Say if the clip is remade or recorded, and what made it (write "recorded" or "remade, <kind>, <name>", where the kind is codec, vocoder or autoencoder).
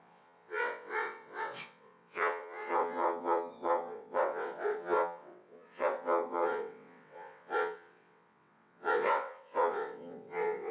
remade, vocoder, WaveNeXt